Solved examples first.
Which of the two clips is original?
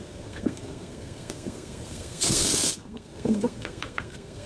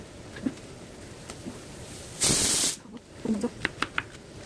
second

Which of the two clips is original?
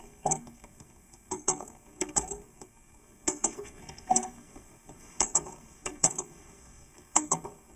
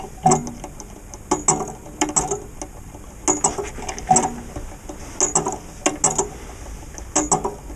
second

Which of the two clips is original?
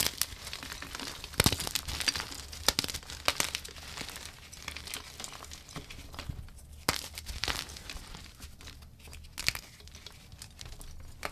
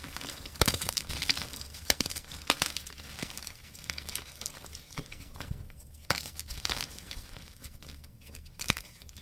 first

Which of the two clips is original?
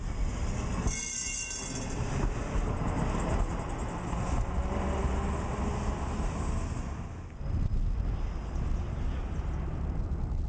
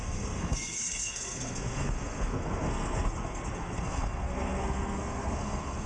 first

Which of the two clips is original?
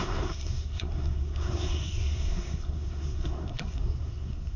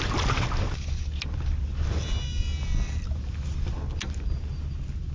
second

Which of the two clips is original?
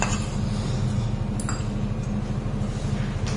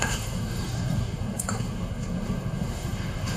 first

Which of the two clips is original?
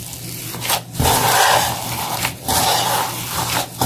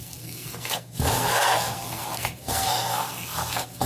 first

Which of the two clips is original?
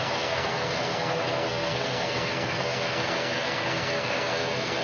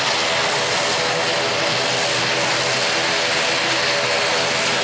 second